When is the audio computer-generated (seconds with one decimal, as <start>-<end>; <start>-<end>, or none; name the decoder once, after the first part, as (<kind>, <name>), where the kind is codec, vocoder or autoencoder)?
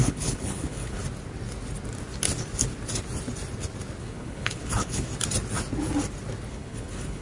0.0-1.0 (codec, HILCodec); 4.0-5.1; 6.5-7.2